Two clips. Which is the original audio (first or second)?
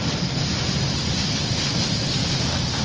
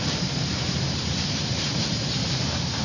first